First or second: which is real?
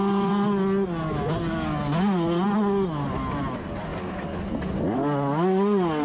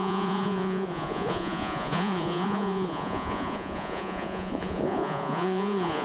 first